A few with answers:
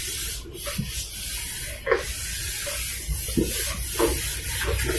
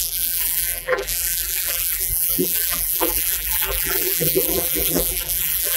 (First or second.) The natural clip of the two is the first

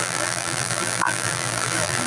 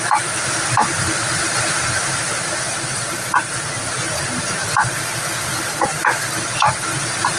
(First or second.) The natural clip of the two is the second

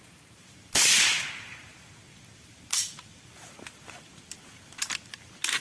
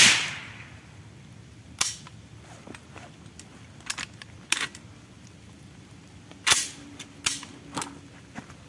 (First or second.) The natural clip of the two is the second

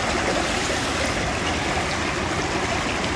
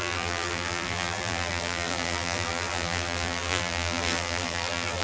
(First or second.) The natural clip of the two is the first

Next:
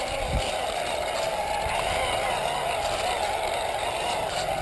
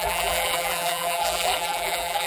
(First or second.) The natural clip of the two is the first